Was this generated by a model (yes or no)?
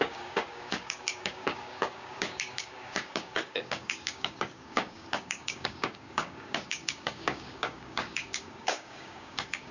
yes